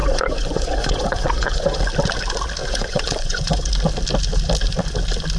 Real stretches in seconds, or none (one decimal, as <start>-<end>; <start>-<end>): 1.8-2.6; 3.7-5.4